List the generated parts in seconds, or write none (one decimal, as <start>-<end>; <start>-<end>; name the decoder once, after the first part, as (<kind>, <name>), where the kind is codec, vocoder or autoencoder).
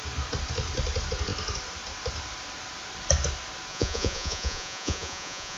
3.7-5.6 (vocoder, Vocos)